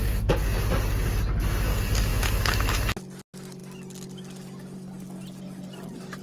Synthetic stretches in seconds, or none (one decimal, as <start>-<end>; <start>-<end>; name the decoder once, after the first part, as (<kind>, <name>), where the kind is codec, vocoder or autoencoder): 2.1-2.8 (autoencoder, DAC-VAE)